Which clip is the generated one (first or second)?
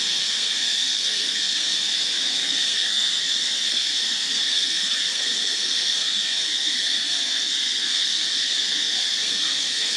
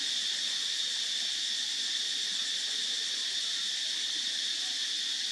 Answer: first